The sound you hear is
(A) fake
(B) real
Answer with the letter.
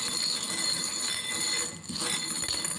B